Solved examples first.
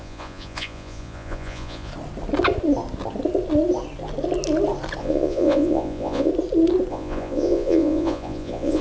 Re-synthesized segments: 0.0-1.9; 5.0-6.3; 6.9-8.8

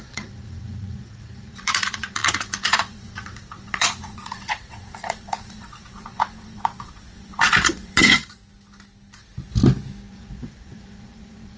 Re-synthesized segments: 0.0-8.4; 10.1-11.6

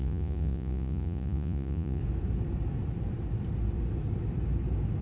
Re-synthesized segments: 0.0-2.0